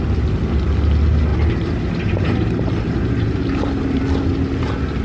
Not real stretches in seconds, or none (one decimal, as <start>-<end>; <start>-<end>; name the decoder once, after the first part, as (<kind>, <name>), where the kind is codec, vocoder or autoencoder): 1.3-4.0 (vocoder, BigVGAN v2)